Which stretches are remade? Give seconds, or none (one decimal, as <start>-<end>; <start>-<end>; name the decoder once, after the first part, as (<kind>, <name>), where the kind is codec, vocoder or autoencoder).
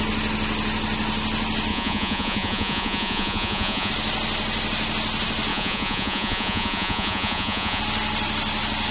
1.7-3.9 (vocoder, Vocos); 5.5-7.8